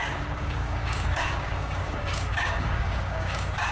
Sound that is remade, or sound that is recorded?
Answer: remade